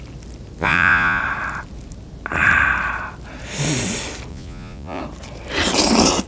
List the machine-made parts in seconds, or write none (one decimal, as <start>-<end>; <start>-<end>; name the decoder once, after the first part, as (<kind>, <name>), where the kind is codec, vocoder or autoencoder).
0.6-1.2 (vocoder, Vocos); 4.3-5.0